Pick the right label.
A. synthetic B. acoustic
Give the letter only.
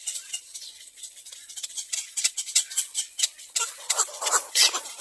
A